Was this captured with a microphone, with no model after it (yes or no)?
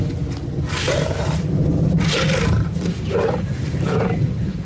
yes